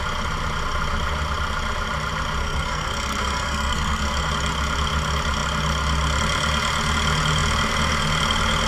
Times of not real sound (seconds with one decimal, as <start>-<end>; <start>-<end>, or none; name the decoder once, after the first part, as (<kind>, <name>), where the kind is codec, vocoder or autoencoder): 2.4-4.3 (codec, SNAC)